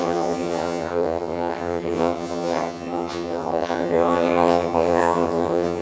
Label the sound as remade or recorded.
remade